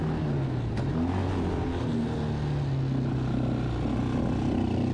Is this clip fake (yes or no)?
no